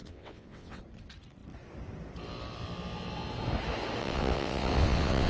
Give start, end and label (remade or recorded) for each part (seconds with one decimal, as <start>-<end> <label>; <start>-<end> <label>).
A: 0.0-0.8 remade; 0.8-4.0 recorded; 4.0-5.3 remade